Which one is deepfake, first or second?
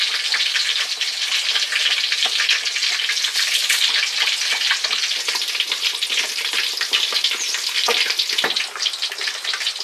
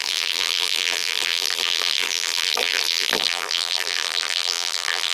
second